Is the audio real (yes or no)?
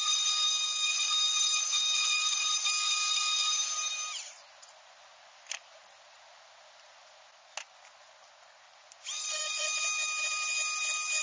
yes